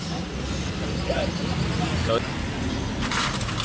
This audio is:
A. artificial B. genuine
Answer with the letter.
B